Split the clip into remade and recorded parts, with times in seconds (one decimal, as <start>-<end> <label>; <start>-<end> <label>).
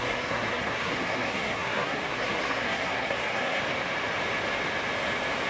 0.0-3.6 remade; 3.6-5.5 recorded